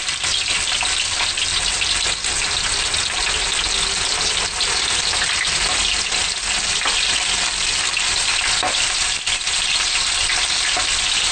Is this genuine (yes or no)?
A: yes